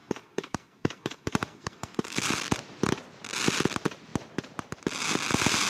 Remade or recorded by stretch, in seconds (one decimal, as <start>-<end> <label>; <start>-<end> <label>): 0.0-2.3 remade; 2.3-5.7 recorded